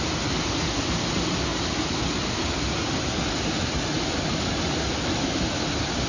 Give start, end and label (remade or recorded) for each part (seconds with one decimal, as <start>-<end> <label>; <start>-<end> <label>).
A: 0.0-6.1 recorded